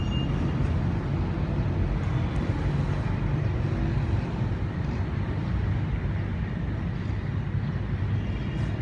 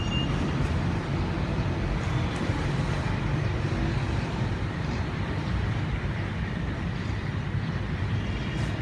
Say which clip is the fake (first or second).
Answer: second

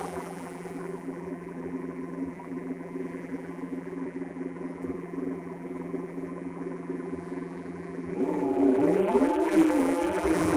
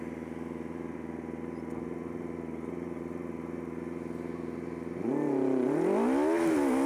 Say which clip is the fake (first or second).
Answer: first